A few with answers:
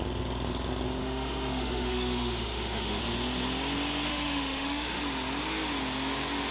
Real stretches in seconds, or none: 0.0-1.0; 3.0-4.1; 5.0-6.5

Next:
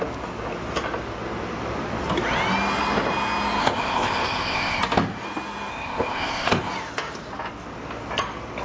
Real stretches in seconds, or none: 0.0-3.6; 4.8-5.7; 6.7-8.6

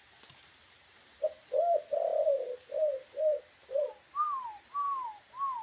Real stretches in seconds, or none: 0.0-5.6